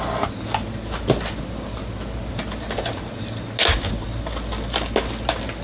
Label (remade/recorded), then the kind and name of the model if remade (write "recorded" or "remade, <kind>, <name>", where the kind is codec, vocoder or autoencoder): recorded